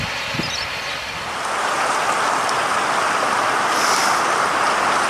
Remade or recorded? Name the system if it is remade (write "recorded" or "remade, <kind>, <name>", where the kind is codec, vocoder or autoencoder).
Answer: recorded